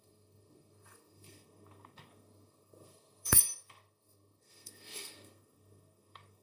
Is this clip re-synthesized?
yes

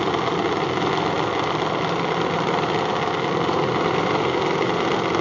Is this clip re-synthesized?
no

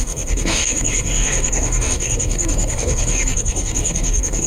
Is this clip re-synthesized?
yes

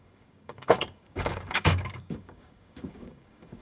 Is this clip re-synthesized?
yes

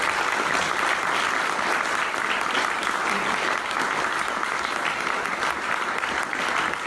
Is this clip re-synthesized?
no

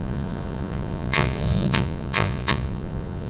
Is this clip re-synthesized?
yes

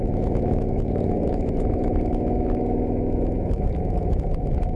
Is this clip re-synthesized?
yes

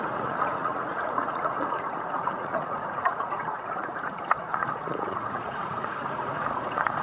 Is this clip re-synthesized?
yes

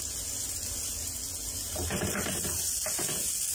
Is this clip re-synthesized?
no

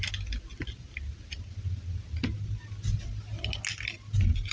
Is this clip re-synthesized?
no